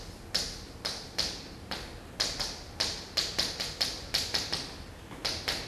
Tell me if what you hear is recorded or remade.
recorded